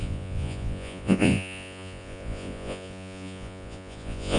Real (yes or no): no